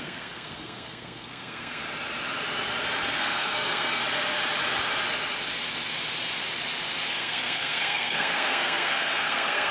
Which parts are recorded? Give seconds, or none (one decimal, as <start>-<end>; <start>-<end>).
1.8-3.2; 4.0-7.1